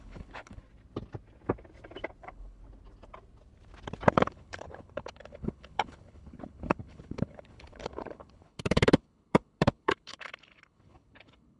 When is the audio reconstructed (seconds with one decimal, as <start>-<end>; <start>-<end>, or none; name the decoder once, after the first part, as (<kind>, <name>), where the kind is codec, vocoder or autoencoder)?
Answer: 0.0-0.6 (codec, HILCodec); 2.2-2.6; 4.1-11.6